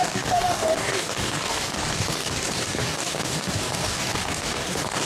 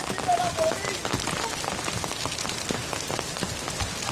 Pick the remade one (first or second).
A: first